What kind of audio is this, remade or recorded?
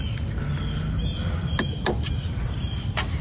recorded